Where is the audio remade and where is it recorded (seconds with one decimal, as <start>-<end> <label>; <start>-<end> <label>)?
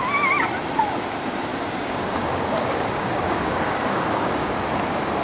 0.0-1.5 recorded; 1.5-4.6 remade; 4.6-5.2 recorded